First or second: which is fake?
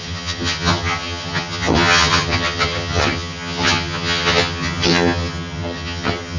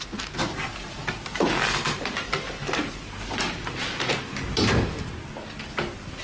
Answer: first